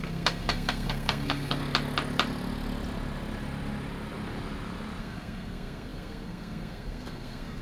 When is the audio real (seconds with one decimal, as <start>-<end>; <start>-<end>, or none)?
1.6-5.0